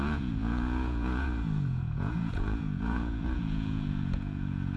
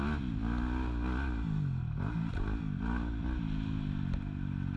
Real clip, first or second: second